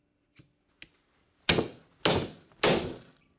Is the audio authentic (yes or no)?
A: yes